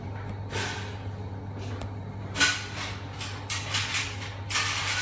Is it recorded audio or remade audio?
recorded